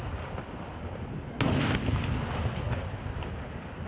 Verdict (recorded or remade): recorded